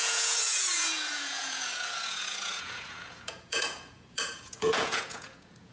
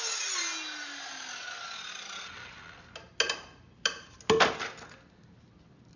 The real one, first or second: second